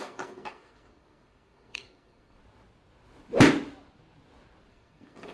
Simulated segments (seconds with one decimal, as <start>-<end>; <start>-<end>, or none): 0.0-2.4; 4.7-5.3